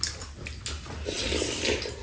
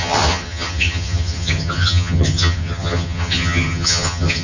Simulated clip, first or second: second